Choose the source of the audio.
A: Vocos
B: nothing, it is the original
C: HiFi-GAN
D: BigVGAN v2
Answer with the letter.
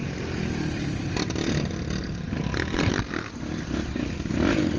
B